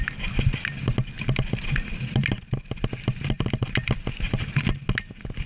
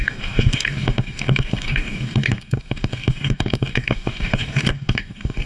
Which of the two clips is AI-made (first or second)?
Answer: second